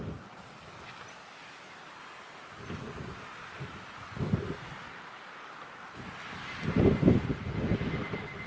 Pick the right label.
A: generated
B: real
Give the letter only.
B